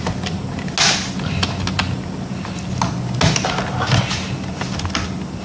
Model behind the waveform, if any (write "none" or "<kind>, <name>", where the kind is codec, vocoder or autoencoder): none